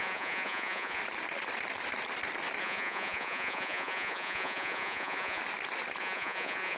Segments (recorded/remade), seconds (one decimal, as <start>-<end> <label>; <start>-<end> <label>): 0.0-1.0 remade; 1.0-2.6 recorded; 2.6-5.4 remade; 5.4-6.0 recorded; 6.0-6.8 remade